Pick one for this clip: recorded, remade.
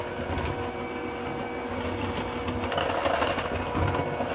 recorded